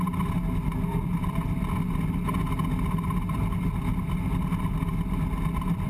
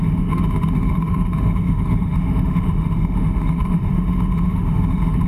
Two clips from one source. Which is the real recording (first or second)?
first